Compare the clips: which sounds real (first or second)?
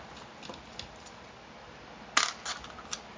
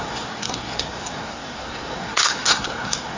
first